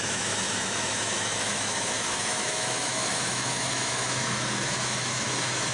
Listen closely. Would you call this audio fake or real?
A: fake